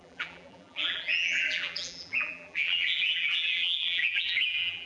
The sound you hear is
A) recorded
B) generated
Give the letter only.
B